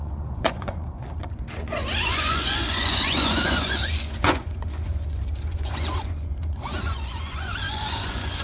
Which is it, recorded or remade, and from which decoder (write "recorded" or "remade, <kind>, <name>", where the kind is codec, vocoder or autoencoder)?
remade, vocoder, Vocos